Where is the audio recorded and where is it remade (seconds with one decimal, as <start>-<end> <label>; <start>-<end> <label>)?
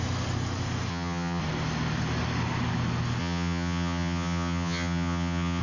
0.0-0.9 recorded; 0.9-1.4 remade; 1.4-3.2 recorded; 3.2-5.6 remade